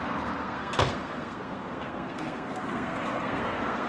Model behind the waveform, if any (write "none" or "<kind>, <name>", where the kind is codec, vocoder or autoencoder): codec, SNAC